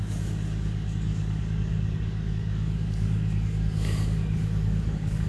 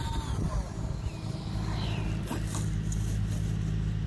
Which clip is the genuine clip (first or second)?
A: second